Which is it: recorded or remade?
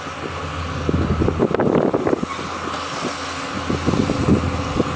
recorded